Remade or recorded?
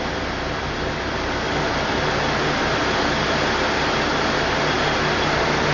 recorded